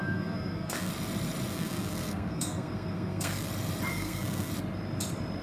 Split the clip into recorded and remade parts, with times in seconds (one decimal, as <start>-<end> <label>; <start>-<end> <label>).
0.0-0.9 remade; 0.9-1.5 recorded; 1.5-3.5 remade; 3.5-3.9 recorded; 3.9-4.5 remade; 4.5-5.4 recorded